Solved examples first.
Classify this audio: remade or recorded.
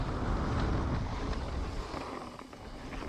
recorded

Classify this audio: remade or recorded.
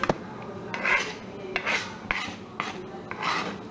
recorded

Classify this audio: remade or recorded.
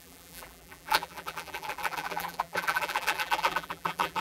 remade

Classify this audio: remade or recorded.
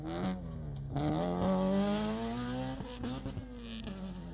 recorded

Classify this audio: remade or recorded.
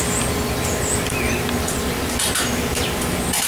recorded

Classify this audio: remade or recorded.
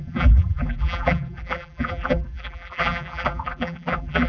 remade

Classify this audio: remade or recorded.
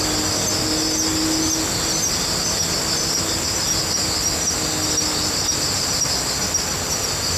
recorded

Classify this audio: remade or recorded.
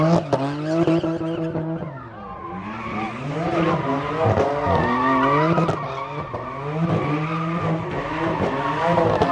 recorded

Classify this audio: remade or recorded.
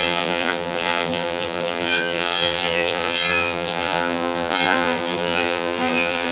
remade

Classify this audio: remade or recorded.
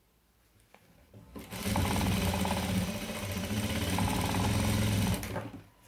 recorded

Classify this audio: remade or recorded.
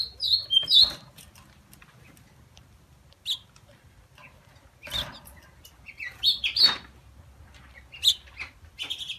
recorded